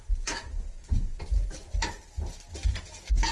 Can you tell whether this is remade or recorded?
recorded